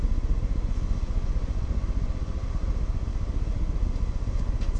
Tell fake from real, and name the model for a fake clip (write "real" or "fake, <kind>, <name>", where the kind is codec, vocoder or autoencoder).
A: real